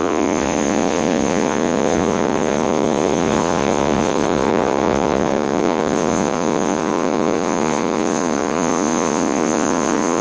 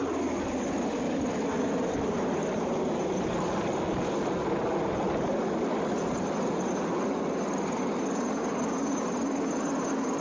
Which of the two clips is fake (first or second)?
first